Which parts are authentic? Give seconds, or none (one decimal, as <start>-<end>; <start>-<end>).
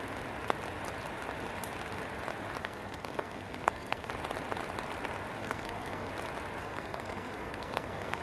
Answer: 0.0-2.6; 4.1-5.4; 6.1-6.6